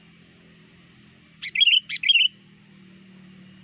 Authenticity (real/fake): real